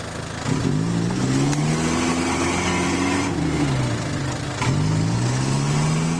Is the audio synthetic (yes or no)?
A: no